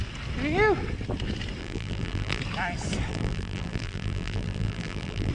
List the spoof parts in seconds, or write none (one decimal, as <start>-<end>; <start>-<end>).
1.6-2.4; 3.1-5.3